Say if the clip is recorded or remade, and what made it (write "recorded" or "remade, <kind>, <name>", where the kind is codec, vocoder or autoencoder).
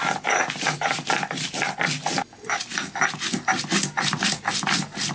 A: recorded